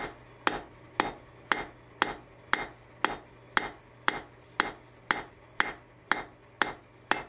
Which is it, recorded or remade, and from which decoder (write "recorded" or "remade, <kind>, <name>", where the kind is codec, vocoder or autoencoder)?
recorded